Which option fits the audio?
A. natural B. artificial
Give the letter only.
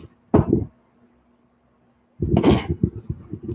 A